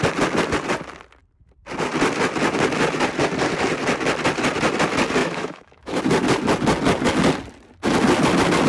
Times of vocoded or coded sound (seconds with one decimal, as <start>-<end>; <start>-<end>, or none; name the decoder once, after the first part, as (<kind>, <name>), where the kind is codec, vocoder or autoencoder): 5.2-6.0 (autoencoder, DAC-VAE)